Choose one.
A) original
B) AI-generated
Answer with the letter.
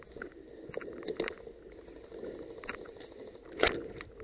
A